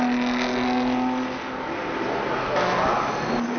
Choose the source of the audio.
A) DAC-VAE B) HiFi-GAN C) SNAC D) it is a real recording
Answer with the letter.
D